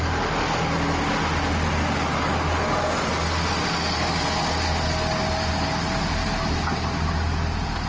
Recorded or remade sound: recorded